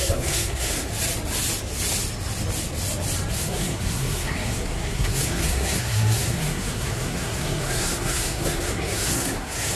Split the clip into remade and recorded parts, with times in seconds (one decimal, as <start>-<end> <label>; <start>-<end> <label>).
0.0-0.9 remade; 0.9-3.3 recorded; 3.3-9.7 remade